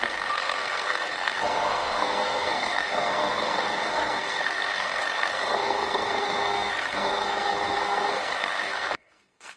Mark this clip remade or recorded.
remade